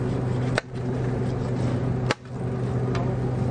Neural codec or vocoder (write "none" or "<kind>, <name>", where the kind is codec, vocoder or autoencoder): none